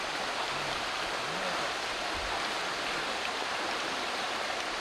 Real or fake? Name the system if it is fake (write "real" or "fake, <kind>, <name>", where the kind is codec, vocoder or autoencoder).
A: real